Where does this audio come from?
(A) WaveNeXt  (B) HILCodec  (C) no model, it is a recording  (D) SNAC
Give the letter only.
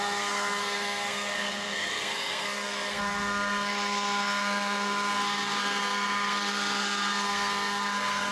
D